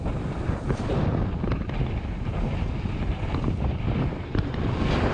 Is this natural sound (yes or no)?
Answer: yes